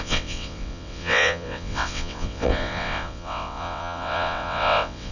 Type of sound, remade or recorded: remade